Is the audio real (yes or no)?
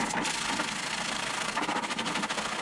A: yes